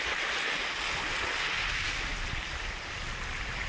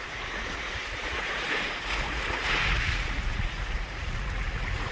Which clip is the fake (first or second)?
second